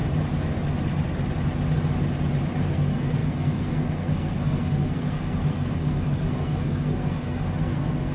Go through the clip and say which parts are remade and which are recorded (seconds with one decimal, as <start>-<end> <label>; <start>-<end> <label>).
0.0-2.6 recorded; 2.6-8.1 remade